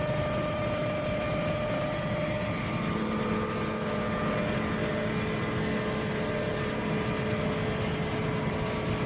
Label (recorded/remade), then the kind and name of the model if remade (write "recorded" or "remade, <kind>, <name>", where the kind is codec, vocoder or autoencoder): recorded